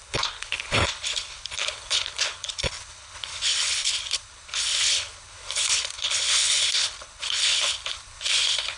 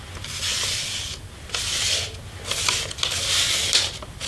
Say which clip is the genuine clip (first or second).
second